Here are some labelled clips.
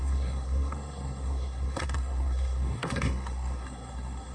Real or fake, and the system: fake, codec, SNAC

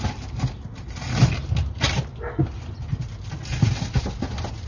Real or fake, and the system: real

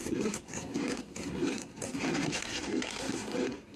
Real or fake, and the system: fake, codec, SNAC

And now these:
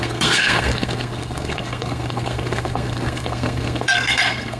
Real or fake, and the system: fake, codec, SNAC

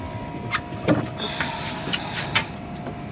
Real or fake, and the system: real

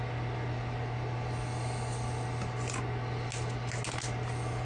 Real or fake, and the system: real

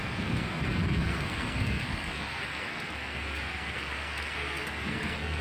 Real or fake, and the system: fake, codec, SNAC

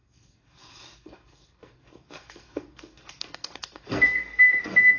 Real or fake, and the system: fake, codec, SNAC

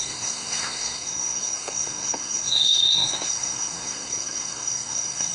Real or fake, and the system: fake, codec, SNAC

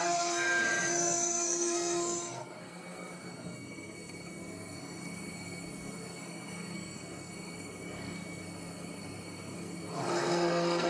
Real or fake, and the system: fake, codec, SNAC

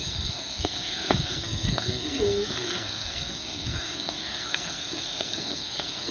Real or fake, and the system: fake, codec, SNAC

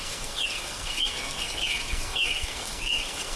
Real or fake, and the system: fake, codec, SNAC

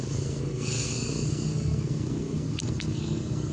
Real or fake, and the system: fake, codec, SNAC